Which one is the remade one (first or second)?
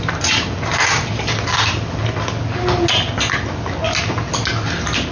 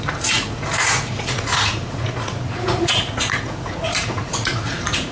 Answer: second